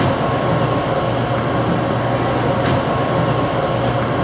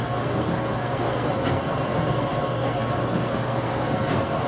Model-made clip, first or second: second